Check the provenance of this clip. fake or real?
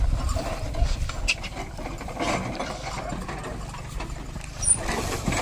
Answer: real